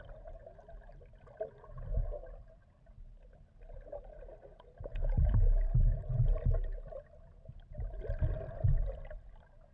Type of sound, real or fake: real